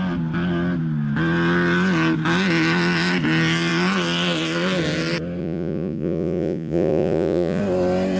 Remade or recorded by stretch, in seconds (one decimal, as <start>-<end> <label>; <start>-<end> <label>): 0.0-5.4 recorded; 5.4-7.6 remade; 7.6-8.2 recorded